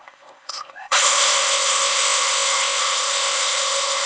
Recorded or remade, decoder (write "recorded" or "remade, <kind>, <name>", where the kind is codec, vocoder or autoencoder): remade, codec, ZipCodec